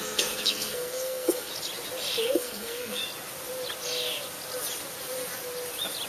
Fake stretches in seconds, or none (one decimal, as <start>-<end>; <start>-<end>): 0.0-1.5; 2.2-3.0